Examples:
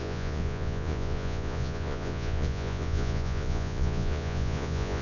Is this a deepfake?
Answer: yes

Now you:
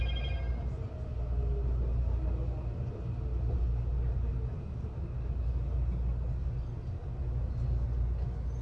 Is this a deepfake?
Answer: no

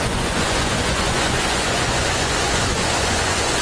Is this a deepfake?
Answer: yes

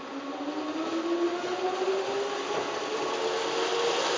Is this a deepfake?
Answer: no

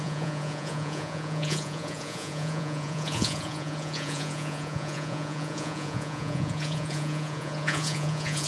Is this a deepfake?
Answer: yes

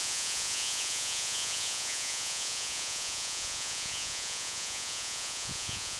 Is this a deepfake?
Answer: yes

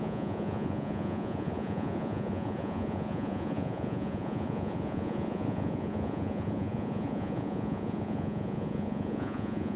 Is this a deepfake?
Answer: yes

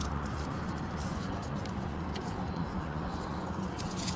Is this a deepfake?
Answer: yes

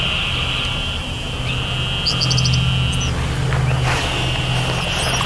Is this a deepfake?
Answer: no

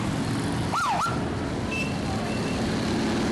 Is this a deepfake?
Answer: no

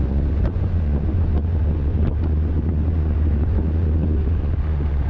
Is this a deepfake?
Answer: yes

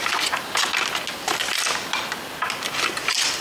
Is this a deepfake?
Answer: no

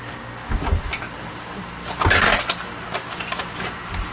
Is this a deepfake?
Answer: no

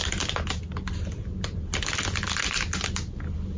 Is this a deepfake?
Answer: no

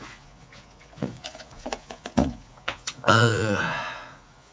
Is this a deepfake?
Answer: yes